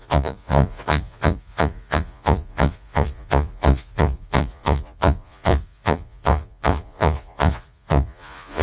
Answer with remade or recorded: remade